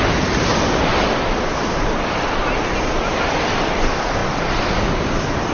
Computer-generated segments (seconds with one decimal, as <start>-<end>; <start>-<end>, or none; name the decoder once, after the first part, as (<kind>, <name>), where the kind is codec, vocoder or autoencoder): none